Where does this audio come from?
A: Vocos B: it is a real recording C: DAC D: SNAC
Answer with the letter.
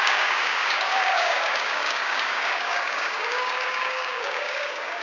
C